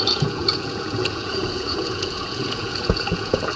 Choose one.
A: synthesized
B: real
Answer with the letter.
A